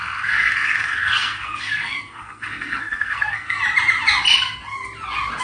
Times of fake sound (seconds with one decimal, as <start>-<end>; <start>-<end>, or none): 0.0-3.6